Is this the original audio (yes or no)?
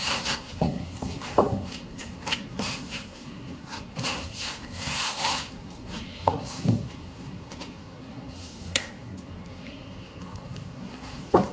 no